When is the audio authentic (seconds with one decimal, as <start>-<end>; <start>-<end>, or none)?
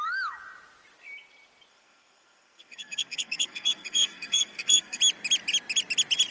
0.0-1.7; 5.0-6.3